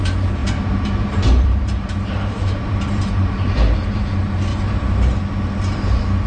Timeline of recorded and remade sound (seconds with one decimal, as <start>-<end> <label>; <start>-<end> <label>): 0.0-0.4 recorded; 0.4-4.0 remade; 4.0-4.5 recorded; 4.5-5.2 remade; 5.2-6.3 recorded